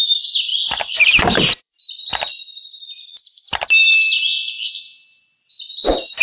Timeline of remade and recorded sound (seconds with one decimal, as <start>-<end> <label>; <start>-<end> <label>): 0.0-0.5 recorded; 0.5-4.2 remade; 4.2-6.2 recorded